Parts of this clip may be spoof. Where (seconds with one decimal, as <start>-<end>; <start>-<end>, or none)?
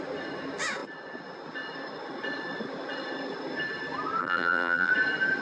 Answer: 4.2-4.9